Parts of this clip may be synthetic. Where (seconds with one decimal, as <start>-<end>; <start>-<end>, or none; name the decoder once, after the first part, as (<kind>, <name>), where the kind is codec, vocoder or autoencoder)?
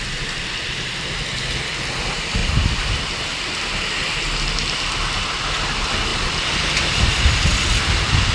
2.4-3.2 (vocoder, BigVGAN v2); 6.1-7.4